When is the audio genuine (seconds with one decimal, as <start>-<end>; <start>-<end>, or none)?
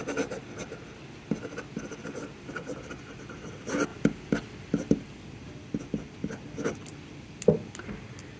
0.0-8.4